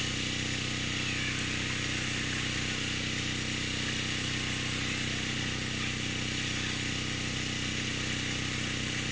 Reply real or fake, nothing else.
real